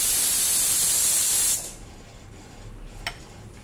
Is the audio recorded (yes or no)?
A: yes